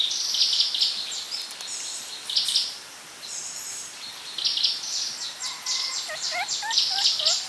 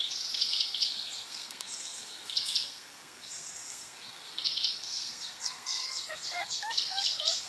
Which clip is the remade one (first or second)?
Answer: second